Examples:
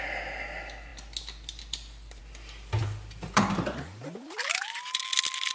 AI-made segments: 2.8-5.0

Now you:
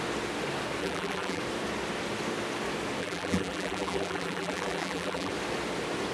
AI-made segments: 0.8-1.4; 3.0-5.3

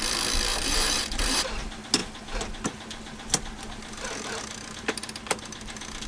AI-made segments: 0.5-1.5

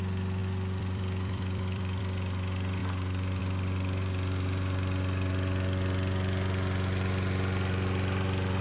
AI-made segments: 0.4-2.0; 2.8-3.4

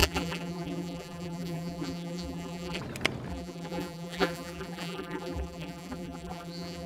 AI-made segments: 0.0-2.8; 3.3-6.9